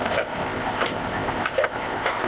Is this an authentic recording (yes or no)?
no